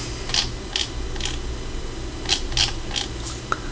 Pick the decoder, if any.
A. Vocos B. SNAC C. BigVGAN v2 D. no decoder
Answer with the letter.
D